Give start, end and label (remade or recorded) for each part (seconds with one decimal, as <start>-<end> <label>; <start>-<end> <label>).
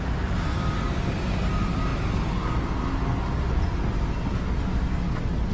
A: 0.0-5.5 recorded